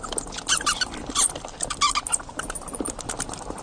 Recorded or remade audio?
recorded